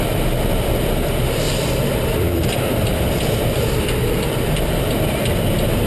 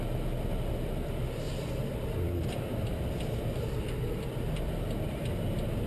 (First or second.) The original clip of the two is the second